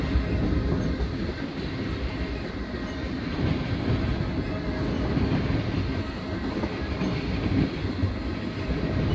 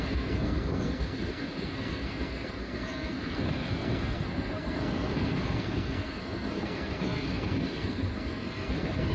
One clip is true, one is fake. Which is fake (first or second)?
second